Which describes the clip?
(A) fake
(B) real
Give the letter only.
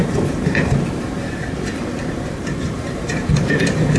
A